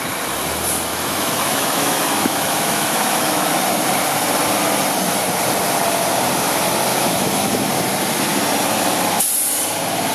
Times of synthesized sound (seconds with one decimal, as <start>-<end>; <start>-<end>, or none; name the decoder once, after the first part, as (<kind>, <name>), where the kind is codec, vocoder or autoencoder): 0.9-3.5 (autoencoder, DAC-VAE); 6.9-7.7